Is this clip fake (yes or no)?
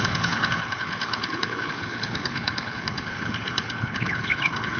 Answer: yes